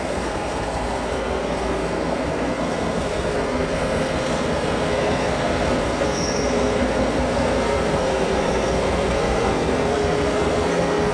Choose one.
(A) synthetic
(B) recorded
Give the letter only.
A